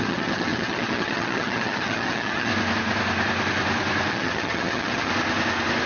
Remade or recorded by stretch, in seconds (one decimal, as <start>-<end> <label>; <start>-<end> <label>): 0.0-2.5 remade; 2.5-4.1 recorded; 4.1-5.1 remade; 5.1-5.9 recorded